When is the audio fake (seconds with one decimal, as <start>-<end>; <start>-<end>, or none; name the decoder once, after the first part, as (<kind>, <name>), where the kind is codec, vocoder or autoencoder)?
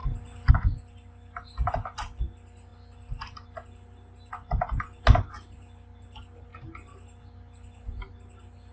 none